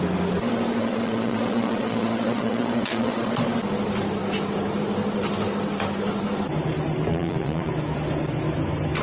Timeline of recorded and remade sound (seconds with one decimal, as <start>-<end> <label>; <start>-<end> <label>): 0.0-0.8 recorded; 0.8-3.3 remade; 3.3-7.1 recorded; 7.1-7.7 remade; 7.7-9.0 recorded